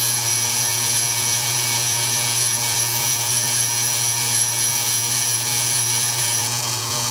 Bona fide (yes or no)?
no